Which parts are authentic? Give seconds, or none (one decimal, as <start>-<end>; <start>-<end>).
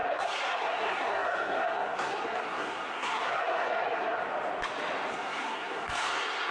4.2-5.1